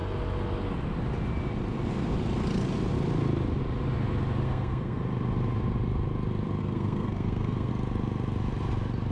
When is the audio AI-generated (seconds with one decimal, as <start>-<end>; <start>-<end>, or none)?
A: 4.4-5.0; 6.6-7.7